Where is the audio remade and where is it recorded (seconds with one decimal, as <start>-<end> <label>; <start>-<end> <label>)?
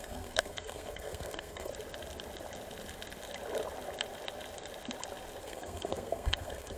0.0-1.7 remade; 1.7-5.4 recorded; 5.4-6.8 remade